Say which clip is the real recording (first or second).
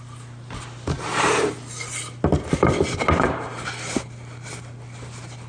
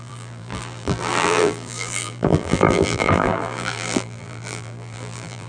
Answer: first